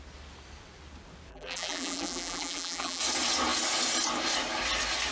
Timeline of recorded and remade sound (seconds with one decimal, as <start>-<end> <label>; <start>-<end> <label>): 0.0-1.3 recorded; 1.3-3.0 remade; 3.0-5.1 recorded